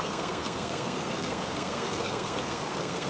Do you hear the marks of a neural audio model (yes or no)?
yes